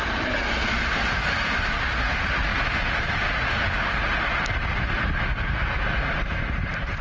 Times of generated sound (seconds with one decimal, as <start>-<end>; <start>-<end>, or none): none